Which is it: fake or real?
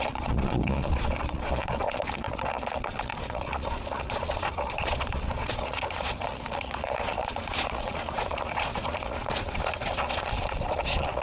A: fake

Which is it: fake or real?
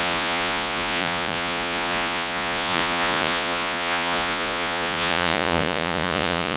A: fake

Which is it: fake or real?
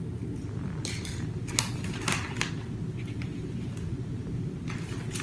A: real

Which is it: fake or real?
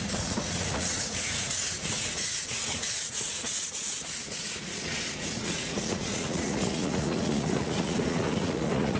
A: fake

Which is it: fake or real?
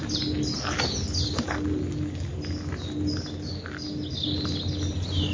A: real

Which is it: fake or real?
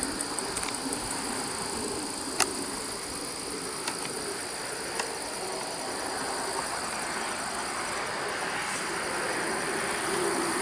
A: real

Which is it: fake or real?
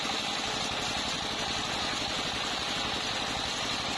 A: real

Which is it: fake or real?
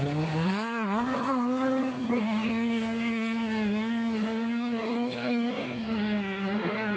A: fake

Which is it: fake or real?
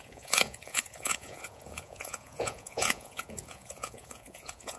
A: fake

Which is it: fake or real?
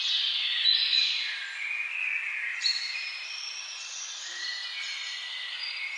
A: real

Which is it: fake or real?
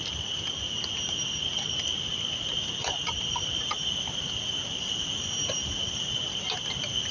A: real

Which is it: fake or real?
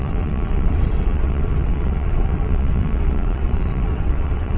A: fake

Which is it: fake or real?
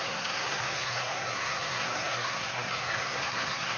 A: fake